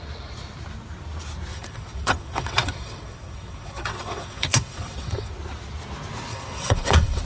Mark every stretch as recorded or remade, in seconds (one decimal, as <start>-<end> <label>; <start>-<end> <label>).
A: 0.0-1.5 recorded; 1.5-5.3 remade; 5.3-6.3 recorded; 6.3-7.2 remade